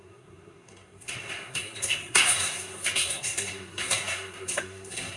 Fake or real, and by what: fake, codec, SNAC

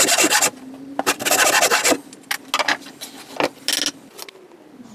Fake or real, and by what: real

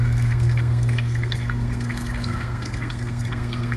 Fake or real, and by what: fake, codec, SNAC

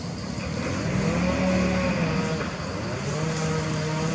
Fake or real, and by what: real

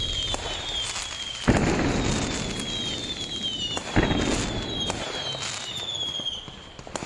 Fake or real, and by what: real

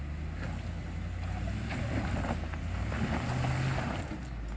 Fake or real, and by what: real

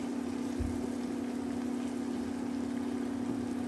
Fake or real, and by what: real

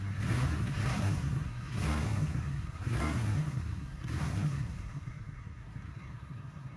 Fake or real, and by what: fake, codec, SNAC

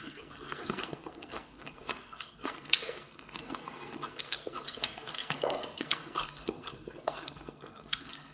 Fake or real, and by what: fake, codec, SNAC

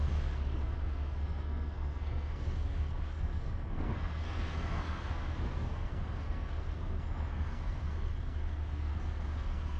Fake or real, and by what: fake, codec, SNAC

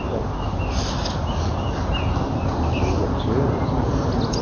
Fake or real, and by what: real